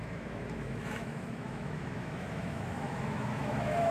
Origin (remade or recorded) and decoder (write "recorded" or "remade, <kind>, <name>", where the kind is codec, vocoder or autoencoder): remade, autoencoder, DAC-VAE